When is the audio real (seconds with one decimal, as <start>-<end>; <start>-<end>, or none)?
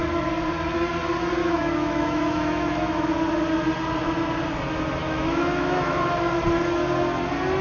0.0-1.4; 3.1-5.0; 6.0-7.6